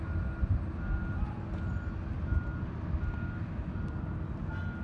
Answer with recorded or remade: recorded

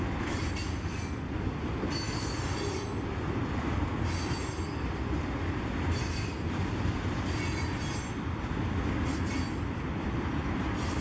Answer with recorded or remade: recorded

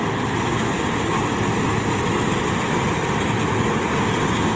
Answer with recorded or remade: recorded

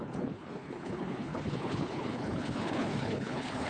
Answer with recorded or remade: remade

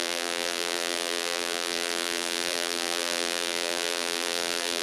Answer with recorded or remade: remade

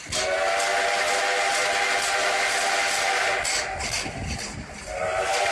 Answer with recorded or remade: recorded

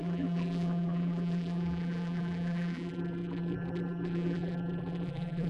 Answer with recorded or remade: remade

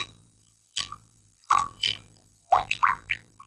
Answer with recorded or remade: remade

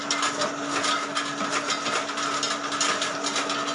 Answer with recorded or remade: recorded